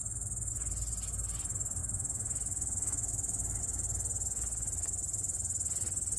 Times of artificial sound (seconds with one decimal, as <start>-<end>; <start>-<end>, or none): 0.0-0.5; 1.8-3.6

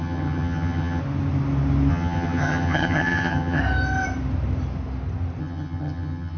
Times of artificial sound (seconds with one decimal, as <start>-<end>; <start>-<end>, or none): 0.0-1.0; 1.9-3.6; 5.4-6.4

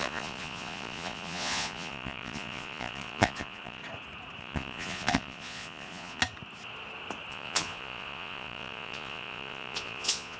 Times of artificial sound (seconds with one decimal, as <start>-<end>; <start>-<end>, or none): 0.0-3.8; 4.4-6.2; 7.3-10.4

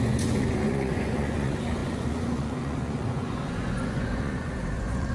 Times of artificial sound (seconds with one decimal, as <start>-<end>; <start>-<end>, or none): 0.0-5.1

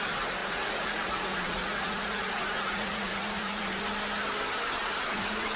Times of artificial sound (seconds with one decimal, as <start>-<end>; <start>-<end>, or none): 0.4-3.8; 4.8-5.6